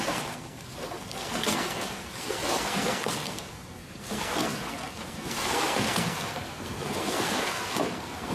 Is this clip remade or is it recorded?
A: remade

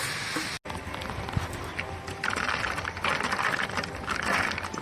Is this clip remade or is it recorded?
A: recorded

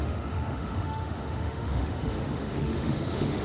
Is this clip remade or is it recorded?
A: remade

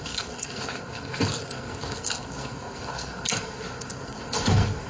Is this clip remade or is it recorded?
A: remade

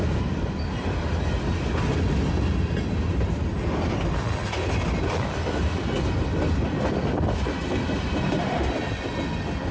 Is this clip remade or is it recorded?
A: recorded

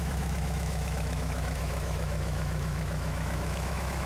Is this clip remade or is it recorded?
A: remade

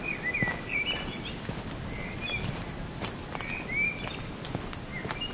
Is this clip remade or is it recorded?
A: recorded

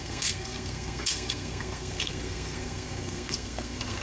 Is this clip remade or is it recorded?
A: remade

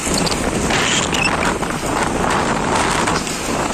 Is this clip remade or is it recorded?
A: recorded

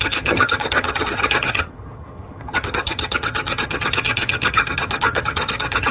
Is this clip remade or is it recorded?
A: remade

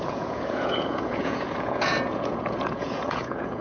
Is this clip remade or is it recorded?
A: remade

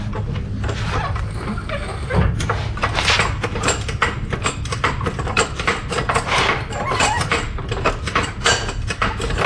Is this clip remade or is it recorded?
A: recorded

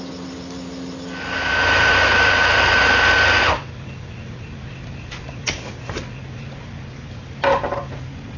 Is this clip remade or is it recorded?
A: recorded